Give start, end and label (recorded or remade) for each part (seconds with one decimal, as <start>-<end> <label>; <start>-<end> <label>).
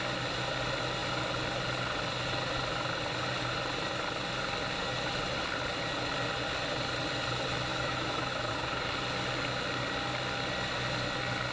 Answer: 0.0-7.7 recorded; 7.7-8.5 remade; 8.5-11.5 recorded